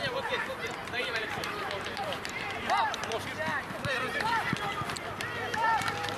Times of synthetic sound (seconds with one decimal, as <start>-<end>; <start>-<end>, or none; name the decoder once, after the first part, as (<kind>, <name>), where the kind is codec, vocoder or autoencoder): 0.8-2.9 (vocoder, BigVGAN v2); 3.5-4.4